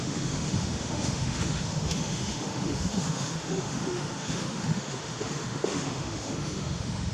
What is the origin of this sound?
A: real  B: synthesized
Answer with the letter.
B